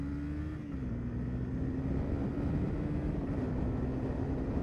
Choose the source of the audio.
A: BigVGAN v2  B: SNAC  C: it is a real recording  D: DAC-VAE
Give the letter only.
C